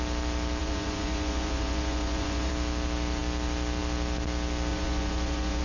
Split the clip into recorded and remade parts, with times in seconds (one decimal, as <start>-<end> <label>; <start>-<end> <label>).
0.0-0.6 recorded; 0.6-2.5 remade; 2.5-4.7 recorded; 4.7-5.6 remade